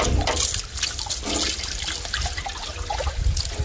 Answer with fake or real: real